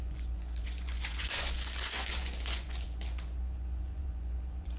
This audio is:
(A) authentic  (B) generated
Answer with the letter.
B